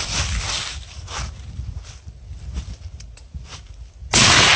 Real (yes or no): yes